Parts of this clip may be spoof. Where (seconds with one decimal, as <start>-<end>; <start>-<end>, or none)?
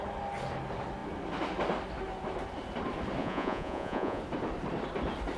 3.2-4.2